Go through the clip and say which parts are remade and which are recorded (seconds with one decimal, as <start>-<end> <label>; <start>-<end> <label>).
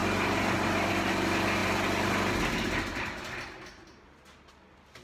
0.0-5.0 recorded